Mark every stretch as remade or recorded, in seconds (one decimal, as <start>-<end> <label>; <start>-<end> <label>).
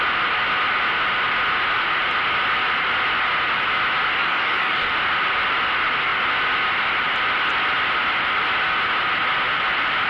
0.0-4.2 recorded; 4.2-4.9 remade; 4.9-10.1 recorded